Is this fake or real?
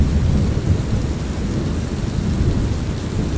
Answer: real